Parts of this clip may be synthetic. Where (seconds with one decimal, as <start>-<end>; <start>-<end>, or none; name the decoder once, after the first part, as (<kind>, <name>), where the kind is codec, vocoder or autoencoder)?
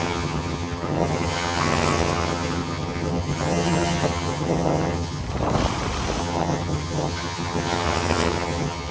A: 0.0-5.2 (vocoder, HiFi-GAN); 6.2-8.9